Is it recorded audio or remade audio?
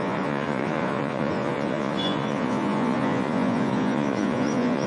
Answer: remade